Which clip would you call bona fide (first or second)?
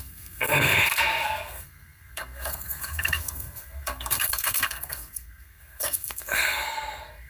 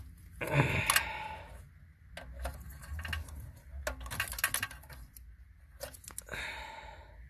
second